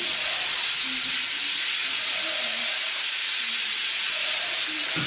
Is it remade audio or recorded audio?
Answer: recorded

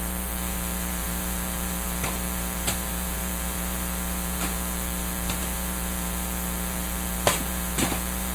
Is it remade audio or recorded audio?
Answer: remade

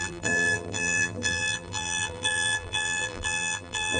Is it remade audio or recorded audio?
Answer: remade